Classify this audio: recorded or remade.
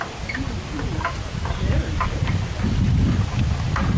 recorded